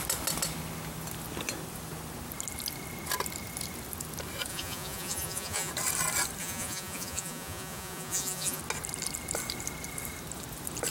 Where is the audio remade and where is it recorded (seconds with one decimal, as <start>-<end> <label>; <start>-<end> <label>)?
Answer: 0.0-4.5 recorded; 4.5-5.7 remade; 5.7-6.4 recorded; 6.4-8.6 remade; 8.6-10.9 recorded